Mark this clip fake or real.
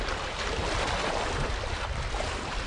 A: real